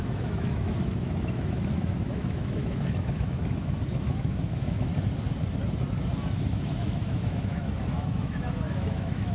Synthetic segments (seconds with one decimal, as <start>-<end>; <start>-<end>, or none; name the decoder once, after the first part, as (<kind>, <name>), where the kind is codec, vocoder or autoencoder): 0.0-4.9 (autoencoder, DAC-VAE); 6.4-9.3